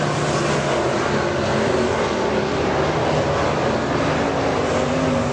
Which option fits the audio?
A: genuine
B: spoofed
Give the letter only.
A